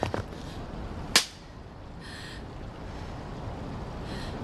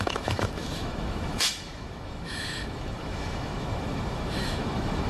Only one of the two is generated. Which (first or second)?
second